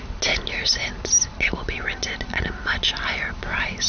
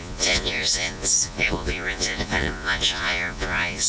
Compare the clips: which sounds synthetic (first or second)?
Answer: second